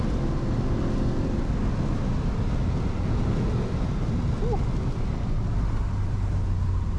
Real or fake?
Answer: real